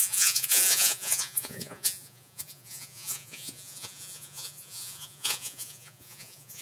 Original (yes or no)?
no